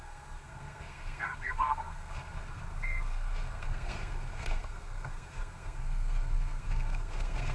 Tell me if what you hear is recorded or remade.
remade